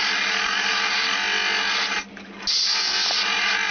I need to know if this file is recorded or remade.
recorded